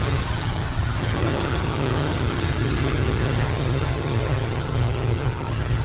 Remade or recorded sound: remade